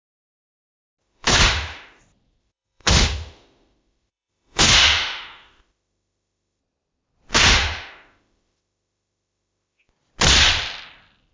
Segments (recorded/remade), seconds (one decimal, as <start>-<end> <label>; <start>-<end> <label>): 0.0-1.0 recorded; 1.0-2.0 remade; 2.0-2.4 recorded; 2.4-6.6 remade; 6.6-7.3 recorded; 7.3-9.9 remade; 9.9-11.3 recorded